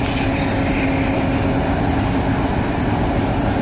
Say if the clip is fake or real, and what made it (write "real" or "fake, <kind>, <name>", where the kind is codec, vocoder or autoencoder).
real